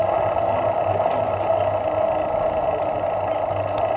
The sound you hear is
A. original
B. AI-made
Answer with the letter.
A